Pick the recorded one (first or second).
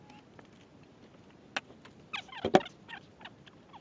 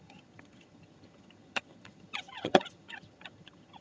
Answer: first